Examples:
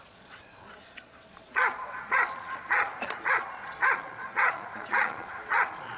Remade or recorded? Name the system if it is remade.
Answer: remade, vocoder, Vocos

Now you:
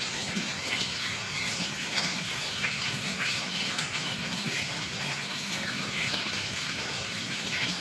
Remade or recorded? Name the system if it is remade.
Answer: remade, codec, SNAC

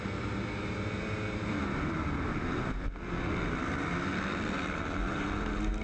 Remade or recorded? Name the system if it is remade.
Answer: recorded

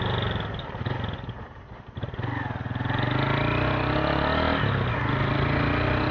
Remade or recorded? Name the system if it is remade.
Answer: recorded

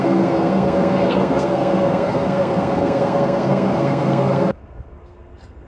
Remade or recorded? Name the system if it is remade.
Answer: remade, codec, SNAC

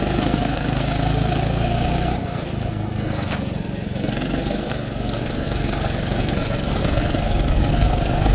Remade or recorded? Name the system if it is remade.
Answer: remade, codec, SNAC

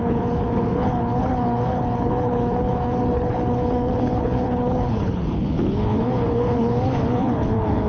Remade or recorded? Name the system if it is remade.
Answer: remade, codec, HILCodec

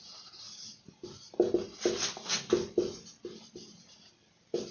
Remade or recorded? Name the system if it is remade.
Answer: recorded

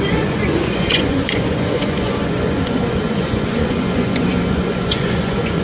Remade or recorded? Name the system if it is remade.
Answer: remade, vocoder, Vocos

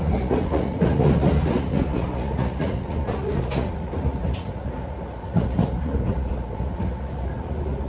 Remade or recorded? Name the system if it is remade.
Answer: remade, vocoder, Vocos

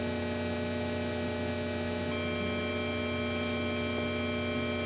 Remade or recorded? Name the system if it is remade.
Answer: recorded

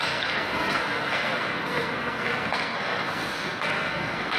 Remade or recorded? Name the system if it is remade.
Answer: remade, codec, SNAC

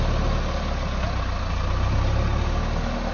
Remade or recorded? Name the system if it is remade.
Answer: recorded